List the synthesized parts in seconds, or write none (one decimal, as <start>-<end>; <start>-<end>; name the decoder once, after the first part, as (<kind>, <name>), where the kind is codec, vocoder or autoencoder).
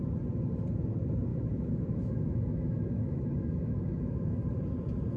1.3-4.4 (autoencoder, DAC-VAE)